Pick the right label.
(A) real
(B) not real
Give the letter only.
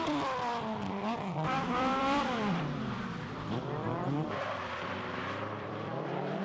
B